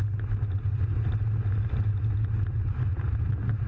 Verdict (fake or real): real